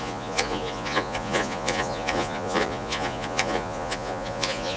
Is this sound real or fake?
fake